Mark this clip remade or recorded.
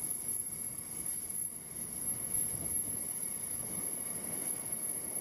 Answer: remade